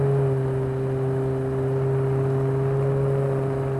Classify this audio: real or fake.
real